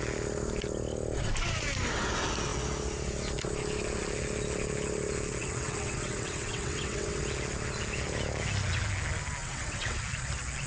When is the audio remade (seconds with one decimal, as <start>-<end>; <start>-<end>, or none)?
5.4-7.2; 9.4-10.0